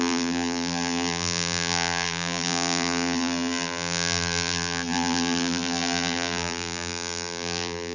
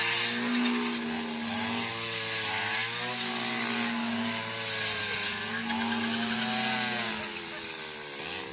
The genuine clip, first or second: second